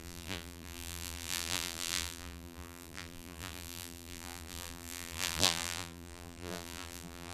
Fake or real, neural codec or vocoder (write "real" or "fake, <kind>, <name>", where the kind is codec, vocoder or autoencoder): fake, vocoder, BigVGAN v2